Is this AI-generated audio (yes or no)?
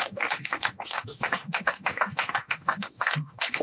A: yes